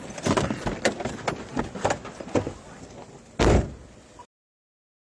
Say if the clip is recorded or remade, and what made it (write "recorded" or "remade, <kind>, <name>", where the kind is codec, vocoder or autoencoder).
recorded